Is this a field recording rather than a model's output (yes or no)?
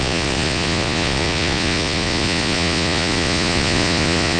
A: no